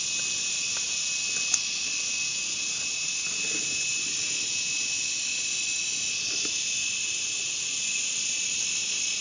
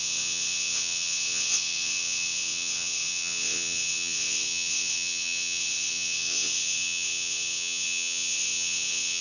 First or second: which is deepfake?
second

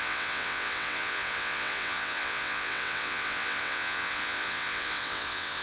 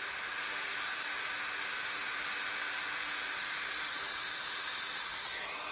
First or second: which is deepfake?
first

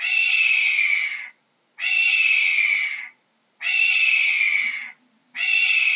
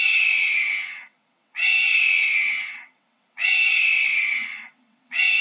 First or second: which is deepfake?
second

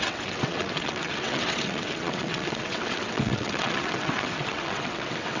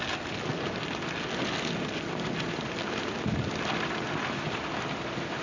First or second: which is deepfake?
first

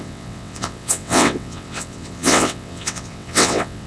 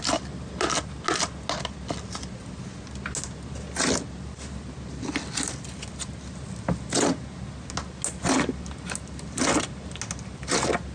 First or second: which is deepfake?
first